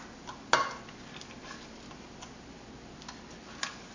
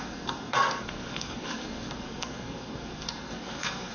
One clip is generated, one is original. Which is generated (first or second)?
second